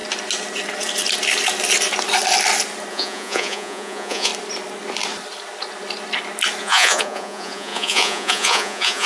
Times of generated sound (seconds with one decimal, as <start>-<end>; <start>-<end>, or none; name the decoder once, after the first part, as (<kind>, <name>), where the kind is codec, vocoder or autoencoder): 2.9-4.3 (vocoder, Vocos); 6.6-9.1